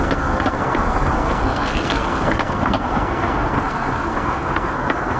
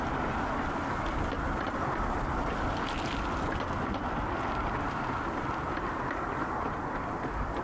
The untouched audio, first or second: second